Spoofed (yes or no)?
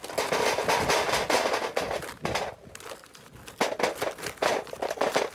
no